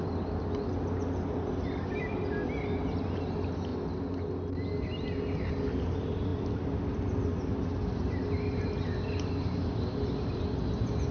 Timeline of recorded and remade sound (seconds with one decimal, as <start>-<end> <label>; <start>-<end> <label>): 0.0-11.1 recorded